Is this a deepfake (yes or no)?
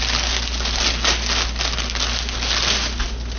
no